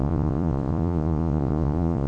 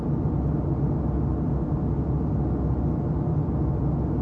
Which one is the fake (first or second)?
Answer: first